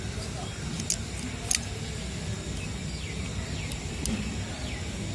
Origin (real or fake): real